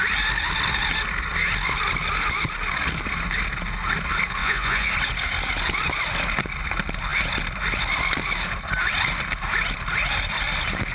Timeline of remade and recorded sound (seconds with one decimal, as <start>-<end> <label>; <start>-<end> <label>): 0.0-4.4 recorded; 4.4-4.9 remade; 4.9-10.9 recorded